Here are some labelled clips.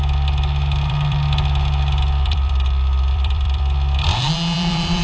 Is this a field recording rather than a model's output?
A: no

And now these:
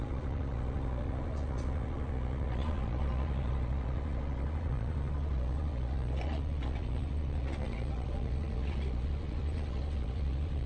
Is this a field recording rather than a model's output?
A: no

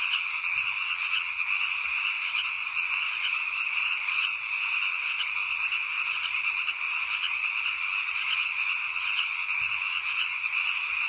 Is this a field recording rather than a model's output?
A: no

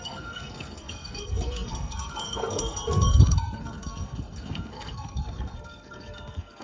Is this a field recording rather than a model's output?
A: no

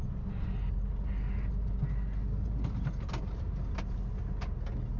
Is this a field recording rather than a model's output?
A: yes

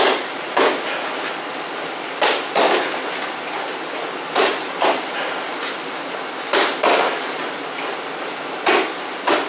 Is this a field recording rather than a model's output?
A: yes